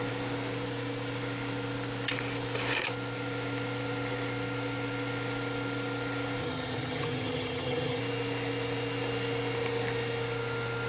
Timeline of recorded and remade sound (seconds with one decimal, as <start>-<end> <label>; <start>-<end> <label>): 0.0-6.4 recorded; 6.4-8.0 remade; 8.0-10.9 recorded